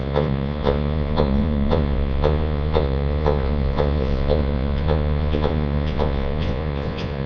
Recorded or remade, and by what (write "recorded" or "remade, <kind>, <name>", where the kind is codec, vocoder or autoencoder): remade, vocoder, Vocos